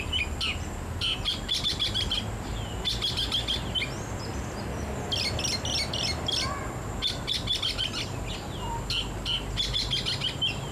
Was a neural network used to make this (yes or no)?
no